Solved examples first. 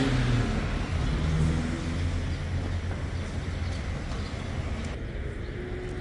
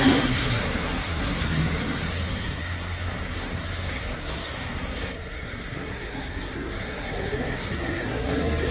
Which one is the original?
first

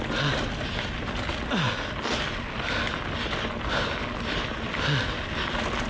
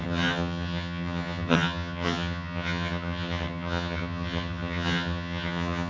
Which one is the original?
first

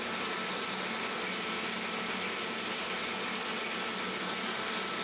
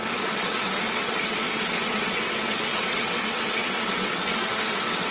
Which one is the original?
first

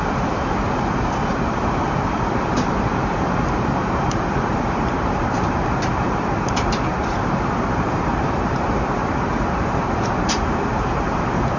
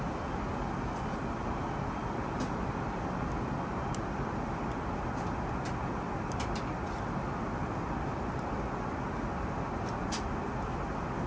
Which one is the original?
second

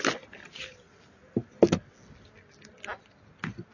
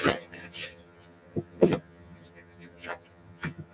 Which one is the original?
first